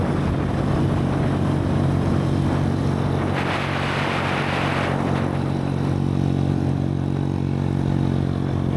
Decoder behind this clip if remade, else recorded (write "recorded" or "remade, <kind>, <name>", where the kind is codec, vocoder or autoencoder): recorded